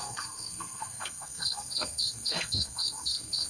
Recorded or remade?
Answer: remade